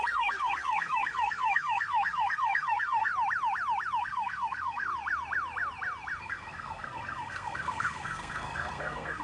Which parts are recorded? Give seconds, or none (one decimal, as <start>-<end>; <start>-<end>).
3.1-4.0; 4.9-6.2